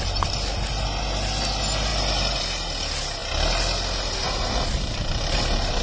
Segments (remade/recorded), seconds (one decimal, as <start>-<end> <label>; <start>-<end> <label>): 0.0-5.8 recorded